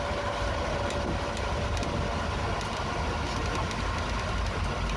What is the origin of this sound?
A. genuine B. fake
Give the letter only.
A